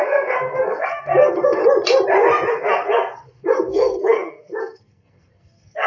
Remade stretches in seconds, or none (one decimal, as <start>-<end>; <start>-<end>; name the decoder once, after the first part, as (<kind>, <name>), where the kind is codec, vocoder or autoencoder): 0.0-1.6 (codec, SNAC); 2.5-5.9